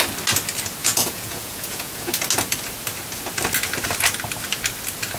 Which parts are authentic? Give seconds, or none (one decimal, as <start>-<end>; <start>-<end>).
0.0-0.8; 2.1-5.2